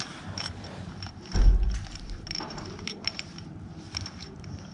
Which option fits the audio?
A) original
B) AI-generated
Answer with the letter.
B